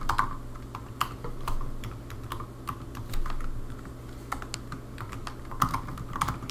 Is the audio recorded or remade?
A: recorded